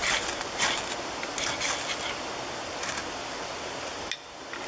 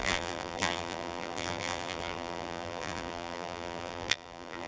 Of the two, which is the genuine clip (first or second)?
first